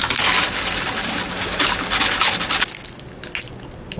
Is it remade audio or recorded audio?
recorded